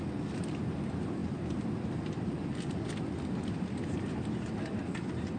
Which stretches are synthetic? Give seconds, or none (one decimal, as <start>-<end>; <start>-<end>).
none